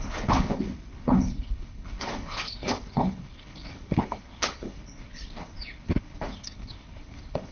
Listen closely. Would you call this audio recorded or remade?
remade